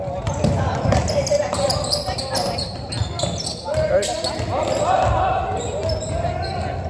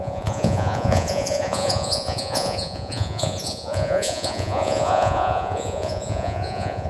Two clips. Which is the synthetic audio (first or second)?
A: second